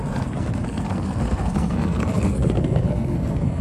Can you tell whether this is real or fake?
fake